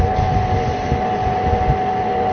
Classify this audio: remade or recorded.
recorded